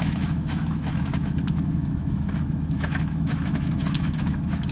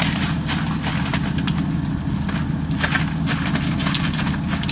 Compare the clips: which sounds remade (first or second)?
first